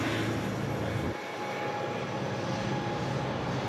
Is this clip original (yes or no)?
yes